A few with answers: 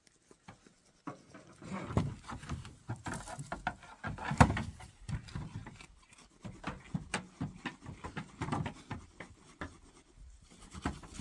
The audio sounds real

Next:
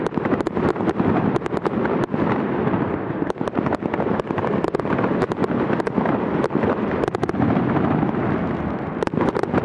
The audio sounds real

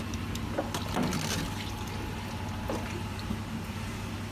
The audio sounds real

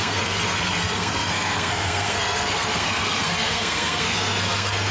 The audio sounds fake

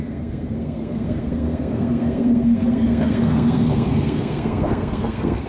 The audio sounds fake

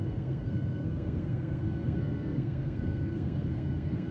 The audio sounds fake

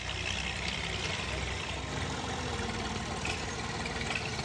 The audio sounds real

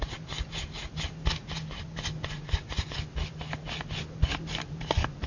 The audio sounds real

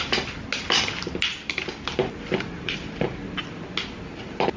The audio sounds real